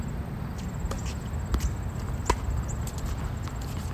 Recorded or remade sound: recorded